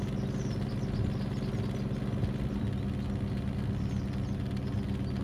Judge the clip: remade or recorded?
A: recorded